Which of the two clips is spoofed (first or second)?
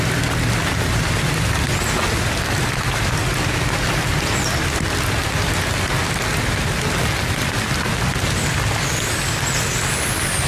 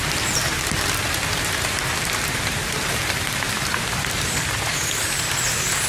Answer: second